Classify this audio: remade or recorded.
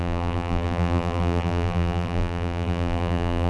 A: remade